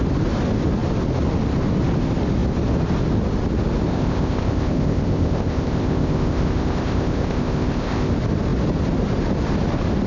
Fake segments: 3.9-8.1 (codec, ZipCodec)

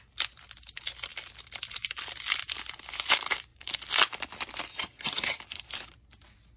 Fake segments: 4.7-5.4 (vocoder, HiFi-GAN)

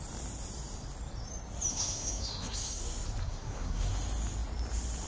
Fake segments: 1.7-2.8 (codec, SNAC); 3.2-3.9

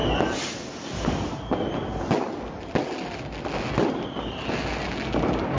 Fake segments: none